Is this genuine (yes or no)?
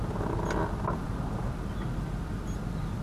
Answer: yes